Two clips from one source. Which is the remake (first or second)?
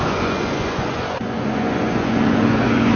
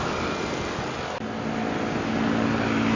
first